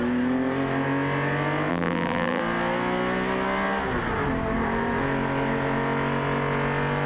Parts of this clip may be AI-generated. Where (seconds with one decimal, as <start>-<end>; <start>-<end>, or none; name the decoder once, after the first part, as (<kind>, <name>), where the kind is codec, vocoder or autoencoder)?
1.7-2.4 (vocoder, BigVGAN v2)